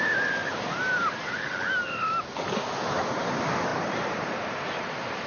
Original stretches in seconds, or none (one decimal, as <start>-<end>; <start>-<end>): 0.0-0.4; 1.3-3.7